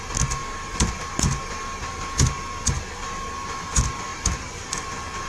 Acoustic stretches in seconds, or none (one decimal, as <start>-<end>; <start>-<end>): 0.0-5.3